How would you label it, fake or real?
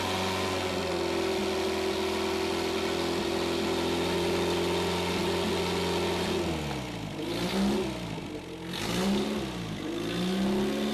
real